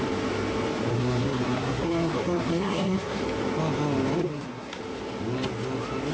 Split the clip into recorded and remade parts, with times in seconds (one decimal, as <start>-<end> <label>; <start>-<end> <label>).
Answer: 0.0-0.9 recorded; 0.9-3.2 remade; 3.2-4.2 recorded; 4.2-4.8 remade; 4.8-6.1 recorded